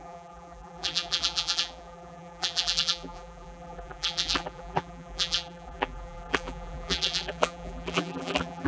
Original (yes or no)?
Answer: no